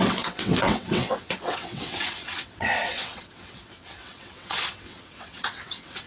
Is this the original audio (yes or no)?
no